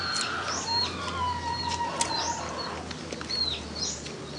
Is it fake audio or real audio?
real